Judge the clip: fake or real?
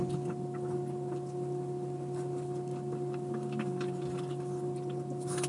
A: real